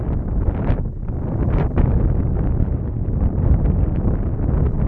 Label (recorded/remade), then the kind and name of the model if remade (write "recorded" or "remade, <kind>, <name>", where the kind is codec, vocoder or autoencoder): recorded